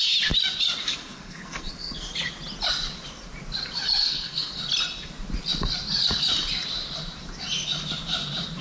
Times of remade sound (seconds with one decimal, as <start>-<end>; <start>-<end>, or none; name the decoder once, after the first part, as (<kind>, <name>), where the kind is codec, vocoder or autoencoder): 0.8-2.1 (codec, SNAC); 4.0-4.6